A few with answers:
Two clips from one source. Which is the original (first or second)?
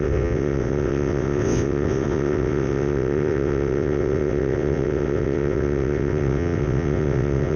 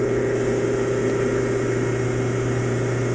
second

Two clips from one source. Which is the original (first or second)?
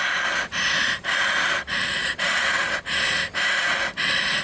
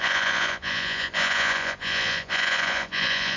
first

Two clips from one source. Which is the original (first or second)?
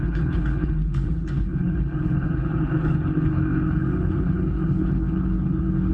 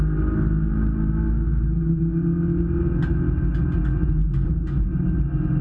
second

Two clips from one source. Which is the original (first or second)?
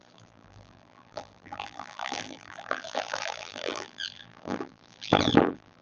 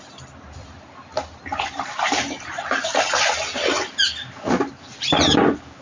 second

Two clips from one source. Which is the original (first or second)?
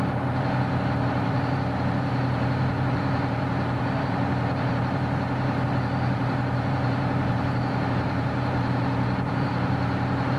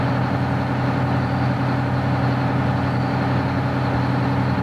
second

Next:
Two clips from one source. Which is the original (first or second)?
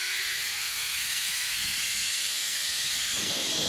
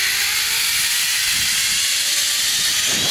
second